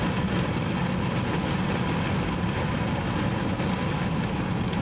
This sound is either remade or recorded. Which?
recorded